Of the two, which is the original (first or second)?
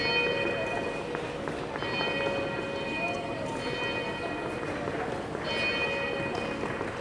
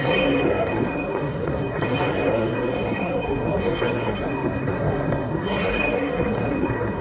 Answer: first